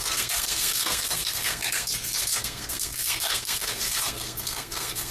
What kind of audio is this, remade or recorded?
remade